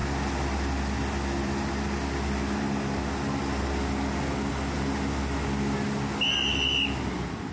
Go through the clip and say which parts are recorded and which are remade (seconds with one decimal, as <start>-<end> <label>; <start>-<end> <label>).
0.0-7.5 recorded